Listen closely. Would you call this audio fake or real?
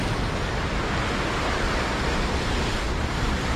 real